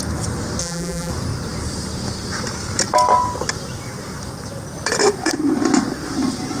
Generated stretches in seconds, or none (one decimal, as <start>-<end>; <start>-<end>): 0.6-1.1